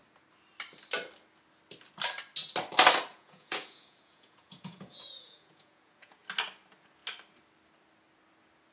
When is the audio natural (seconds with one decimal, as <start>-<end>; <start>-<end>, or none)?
0.0-3.1; 6.2-8.7